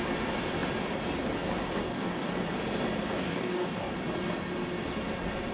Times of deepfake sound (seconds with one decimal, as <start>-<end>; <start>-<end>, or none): 1.8-2.3; 3.1-3.9